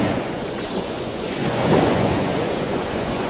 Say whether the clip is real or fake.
fake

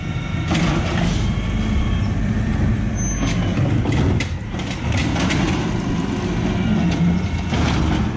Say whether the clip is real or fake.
real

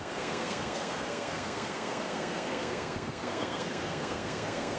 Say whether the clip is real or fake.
fake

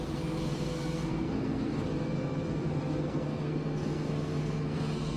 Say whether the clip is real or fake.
fake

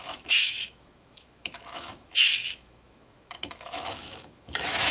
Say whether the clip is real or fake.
fake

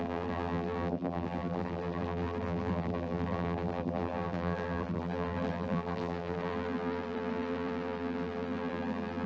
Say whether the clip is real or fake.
fake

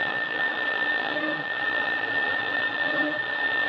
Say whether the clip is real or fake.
fake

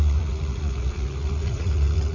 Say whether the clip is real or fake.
fake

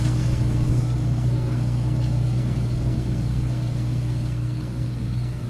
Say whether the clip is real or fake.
fake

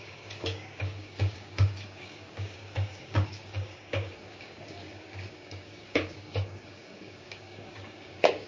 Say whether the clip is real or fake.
fake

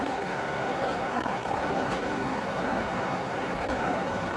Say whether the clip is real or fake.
fake